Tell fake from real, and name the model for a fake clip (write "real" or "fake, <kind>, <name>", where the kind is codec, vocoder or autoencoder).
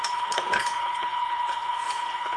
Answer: fake, codec, HILCodec